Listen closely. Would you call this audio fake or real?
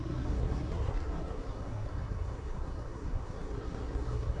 fake